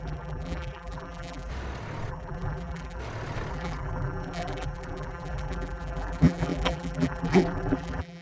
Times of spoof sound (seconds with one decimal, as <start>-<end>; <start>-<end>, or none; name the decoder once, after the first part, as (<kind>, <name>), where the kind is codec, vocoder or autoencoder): 0.0-1.5 (vocoder, BigVGAN v2); 2.1-3.0; 3.5-8.2